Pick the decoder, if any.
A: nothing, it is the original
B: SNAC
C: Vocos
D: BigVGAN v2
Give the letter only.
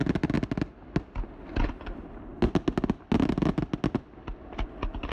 A